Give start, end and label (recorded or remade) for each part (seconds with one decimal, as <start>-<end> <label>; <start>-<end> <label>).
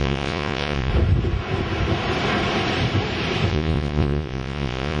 0.0-0.9 remade; 0.9-3.5 recorded; 3.5-5.0 remade